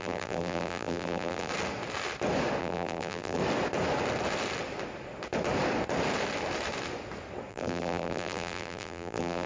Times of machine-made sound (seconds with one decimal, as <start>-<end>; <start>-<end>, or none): 0.0-1.5; 2.6-3.4; 7.5-9.5